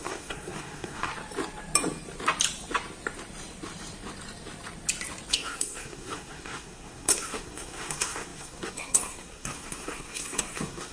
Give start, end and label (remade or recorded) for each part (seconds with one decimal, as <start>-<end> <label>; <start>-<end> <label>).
0.0-1.1 remade; 1.1-5.3 recorded; 5.3-10.9 remade